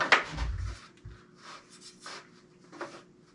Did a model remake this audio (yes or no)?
no